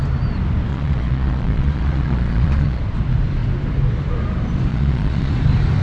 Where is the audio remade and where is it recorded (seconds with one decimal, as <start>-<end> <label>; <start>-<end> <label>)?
0.0-0.7 recorded; 0.7-2.8 remade; 2.8-4.7 recorded; 4.7-5.3 remade; 5.3-5.8 recorded